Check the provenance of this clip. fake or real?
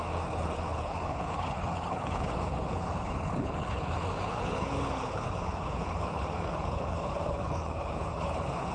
fake